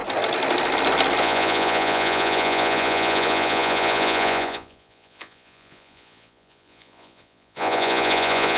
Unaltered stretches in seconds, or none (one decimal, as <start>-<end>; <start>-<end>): 0.0-1.2